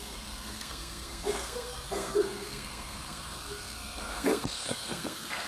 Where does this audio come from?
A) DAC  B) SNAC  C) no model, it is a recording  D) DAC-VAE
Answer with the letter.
B